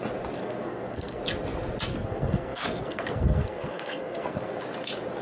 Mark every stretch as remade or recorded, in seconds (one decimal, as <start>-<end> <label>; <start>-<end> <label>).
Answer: 0.0-0.4 recorded; 0.4-1.2 remade; 1.2-1.9 recorded; 1.9-4.6 remade; 4.6-5.2 recorded

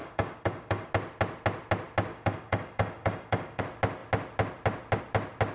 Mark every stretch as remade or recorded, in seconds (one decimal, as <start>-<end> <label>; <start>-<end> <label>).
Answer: 0.0-0.9 remade; 0.9-2.1 recorded; 2.1-3.6 remade; 3.6-5.5 recorded

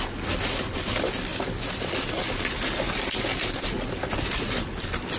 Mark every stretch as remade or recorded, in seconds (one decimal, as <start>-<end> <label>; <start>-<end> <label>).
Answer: 0.0-5.2 recorded

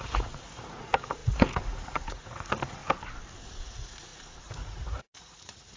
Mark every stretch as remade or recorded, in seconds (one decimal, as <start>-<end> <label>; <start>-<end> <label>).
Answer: 0.0-2.8 remade; 2.8-3.6 recorded; 3.6-5.8 remade